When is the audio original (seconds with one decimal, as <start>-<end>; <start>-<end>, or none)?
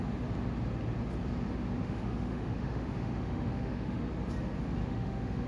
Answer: 0.0-1.8; 4.0-4.8